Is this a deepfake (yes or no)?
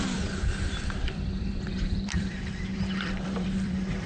yes